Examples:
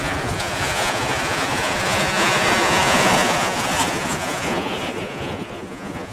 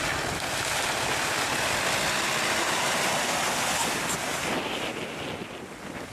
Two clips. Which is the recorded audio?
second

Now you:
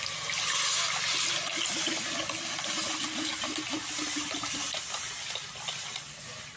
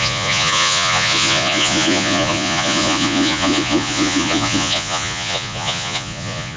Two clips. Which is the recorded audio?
first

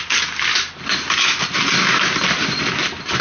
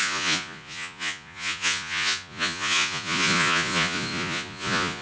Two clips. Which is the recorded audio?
first